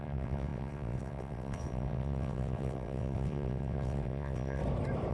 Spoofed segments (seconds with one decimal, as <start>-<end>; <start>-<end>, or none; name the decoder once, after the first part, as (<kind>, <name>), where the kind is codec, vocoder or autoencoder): 0.0-4.6 (vocoder, WaveNeXt)

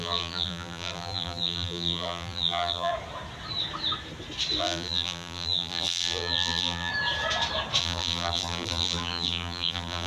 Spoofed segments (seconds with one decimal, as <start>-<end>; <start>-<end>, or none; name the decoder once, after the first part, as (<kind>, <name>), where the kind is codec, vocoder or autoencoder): 0.0-2.9 (vocoder, BigVGAN v2); 4.6-6.9; 7.8-10.1

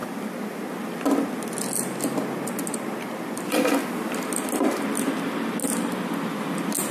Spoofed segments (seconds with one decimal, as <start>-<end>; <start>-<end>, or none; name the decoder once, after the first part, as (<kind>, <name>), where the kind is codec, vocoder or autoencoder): none

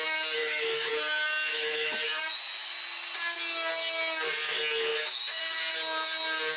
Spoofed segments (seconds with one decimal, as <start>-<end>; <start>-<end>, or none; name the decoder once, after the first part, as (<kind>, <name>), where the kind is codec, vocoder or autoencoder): 0.4-0.9 (autoencoder, DAC-VAE); 1.5-2.2; 4.9-5.4

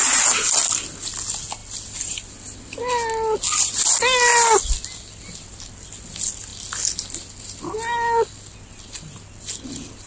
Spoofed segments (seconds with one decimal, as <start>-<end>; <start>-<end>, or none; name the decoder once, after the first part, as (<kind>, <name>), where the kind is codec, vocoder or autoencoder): none